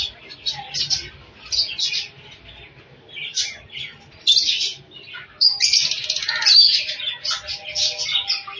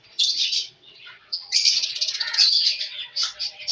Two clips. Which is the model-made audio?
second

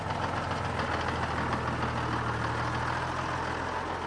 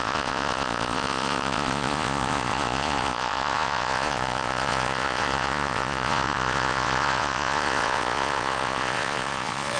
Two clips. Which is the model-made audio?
second